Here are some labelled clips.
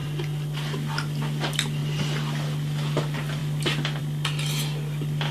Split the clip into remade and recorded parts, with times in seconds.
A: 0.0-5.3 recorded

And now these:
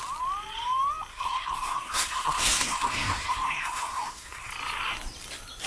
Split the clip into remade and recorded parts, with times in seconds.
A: 0.0-1.1 recorded; 1.1-4.5 remade; 4.5-5.7 recorded

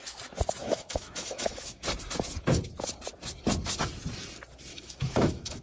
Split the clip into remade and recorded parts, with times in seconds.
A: 0.0-0.6 recorded; 0.6-1.8 remade; 1.8-4.7 recorded; 4.7-5.6 remade

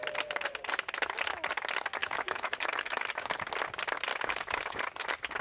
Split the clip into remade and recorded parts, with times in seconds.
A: 0.0-2.0 recorded; 2.0-3.5 remade; 3.5-4.1 recorded; 4.1-4.8 remade; 4.8-5.4 recorded

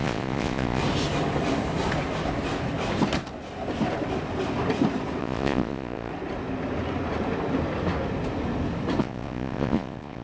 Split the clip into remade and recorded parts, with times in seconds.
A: 0.0-0.8 remade; 0.8-5.2 recorded; 5.2-6.1 remade; 6.1-9.0 recorded; 9.0-10.2 remade

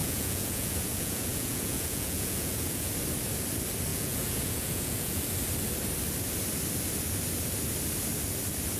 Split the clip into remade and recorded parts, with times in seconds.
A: 0.0-2.9 remade; 2.9-3.9 recorded; 3.9-5.2 remade; 5.2-8.8 recorded